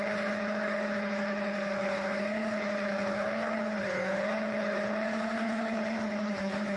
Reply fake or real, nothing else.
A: fake